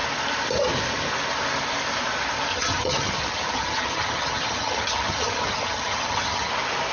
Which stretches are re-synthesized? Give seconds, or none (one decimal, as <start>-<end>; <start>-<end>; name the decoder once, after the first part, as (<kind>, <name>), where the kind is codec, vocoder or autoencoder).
2.5-6.5 (vocoder, HiFi-GAN)